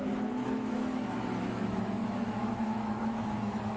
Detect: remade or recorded remade